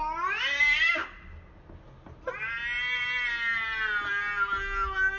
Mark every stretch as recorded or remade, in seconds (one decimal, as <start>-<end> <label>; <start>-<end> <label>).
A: 0.0-5.2 recorded